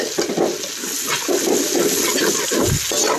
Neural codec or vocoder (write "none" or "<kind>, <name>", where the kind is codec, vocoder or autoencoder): none